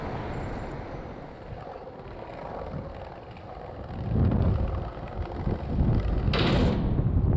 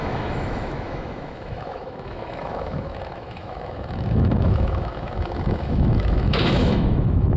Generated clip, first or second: second